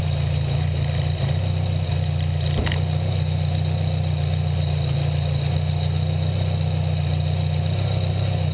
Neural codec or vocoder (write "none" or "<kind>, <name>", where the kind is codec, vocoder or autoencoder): none